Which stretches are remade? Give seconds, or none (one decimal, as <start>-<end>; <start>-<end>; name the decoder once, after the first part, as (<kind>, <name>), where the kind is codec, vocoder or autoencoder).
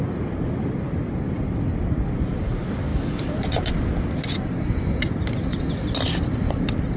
none